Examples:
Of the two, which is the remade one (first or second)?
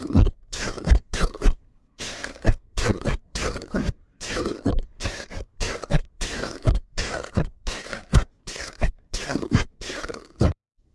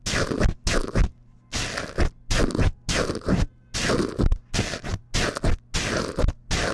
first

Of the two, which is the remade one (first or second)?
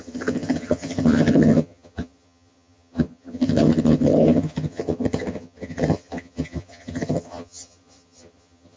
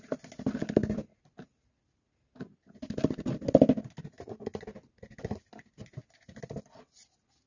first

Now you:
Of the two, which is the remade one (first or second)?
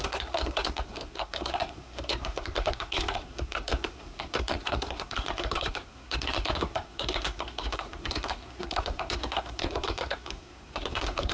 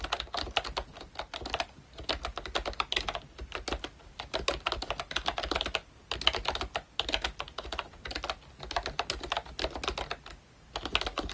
first